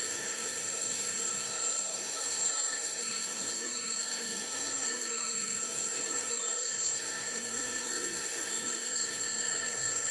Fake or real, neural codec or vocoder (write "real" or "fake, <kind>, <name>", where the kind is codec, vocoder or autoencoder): fake, codec, SNAC